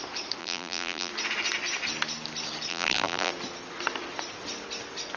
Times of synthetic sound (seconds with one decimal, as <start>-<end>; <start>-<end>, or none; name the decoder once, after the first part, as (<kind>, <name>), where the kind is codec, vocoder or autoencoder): 0.4-1.1 (vocoder, BigVGAN v2); 2.7-3.3